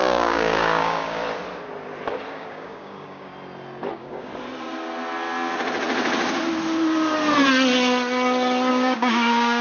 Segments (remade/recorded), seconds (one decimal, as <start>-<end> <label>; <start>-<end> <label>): 0.0-1.2 remade; 1.2-2.3 recorded; 2.3-3.3 remade; 3.3-3.9 recorded; 3.9-4.3 remade; 4.3-8.7 recorded; 8.7-9.6 remade